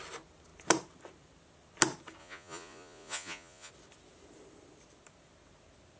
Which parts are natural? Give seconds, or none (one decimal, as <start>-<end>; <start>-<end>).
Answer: 0.0-2.2; 3.7-6.0